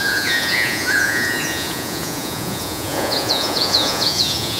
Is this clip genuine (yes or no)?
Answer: no